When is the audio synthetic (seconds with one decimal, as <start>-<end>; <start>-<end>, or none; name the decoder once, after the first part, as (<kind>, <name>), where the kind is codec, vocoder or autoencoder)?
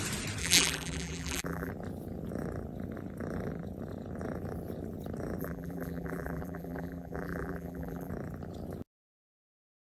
0.4-1.7 (vocoder, BigVGAN v2); 5.4-8.1